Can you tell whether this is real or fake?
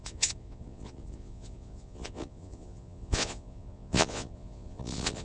fake